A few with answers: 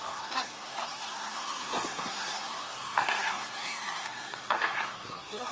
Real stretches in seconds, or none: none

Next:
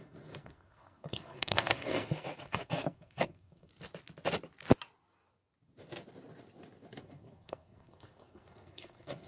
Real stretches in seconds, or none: 3.7-7.0